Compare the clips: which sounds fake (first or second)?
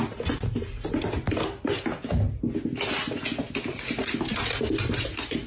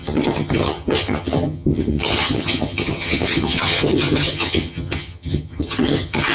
second